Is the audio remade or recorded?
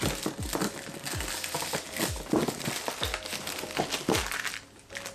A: recorded